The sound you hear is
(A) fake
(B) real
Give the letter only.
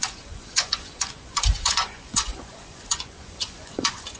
A